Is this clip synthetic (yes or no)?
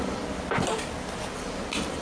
no